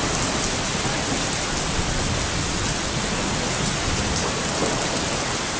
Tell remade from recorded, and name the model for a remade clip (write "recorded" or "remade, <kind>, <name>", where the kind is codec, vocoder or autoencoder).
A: remade, vocoder, BigVGAN v2